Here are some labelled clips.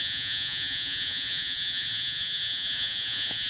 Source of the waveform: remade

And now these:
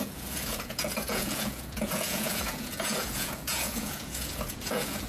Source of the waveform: remade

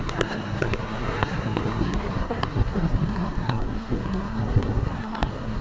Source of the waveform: remade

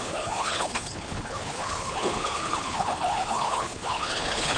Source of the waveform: remade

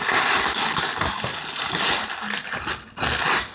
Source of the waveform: recorded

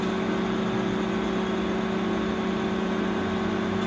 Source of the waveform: recorded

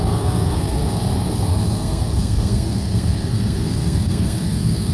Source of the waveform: remade